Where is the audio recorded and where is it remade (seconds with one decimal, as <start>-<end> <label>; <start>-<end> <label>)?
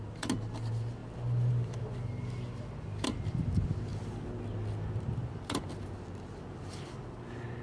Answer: 0.0-7.6 recorded